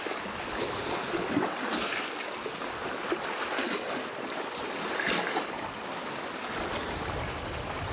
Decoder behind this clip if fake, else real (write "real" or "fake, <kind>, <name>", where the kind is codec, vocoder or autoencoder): real